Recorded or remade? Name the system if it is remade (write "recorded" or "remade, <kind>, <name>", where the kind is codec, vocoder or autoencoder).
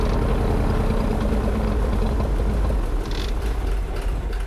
recorded